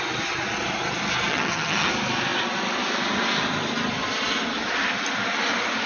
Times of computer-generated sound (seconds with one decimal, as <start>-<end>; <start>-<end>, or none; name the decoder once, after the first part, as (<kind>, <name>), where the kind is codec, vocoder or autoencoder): 1.3-1.9 (vocoder, HiFi-GAN)